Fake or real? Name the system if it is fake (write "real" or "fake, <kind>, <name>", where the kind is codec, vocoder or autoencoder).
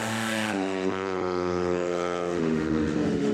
fake, autoencoder, DAC-VAE